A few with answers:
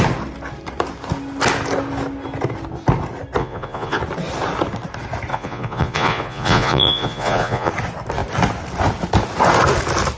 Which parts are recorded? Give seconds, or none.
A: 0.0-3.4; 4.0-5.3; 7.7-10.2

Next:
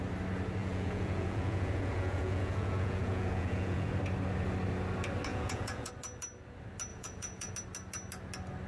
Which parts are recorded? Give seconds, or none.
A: 0.0-0.6; 3.9-5.3; 5.9-6.9; 7.5-8.7